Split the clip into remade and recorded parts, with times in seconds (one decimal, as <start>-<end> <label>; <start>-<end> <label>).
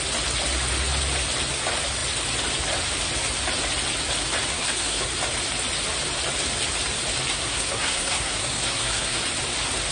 0.0-4.5 recorded; 4.5-5.0 remade; 5.0-7.3 recorded; 7.3-9.2 remade; 9.2-9.9 recorded